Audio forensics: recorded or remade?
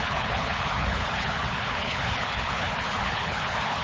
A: remade